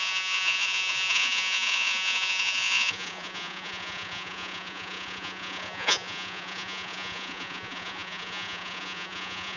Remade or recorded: remade